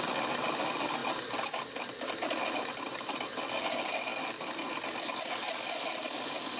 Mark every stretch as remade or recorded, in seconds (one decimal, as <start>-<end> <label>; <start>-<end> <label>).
0.0-1.0 recorded; 1.0-2.7 remade; 2.7-6.6 recorded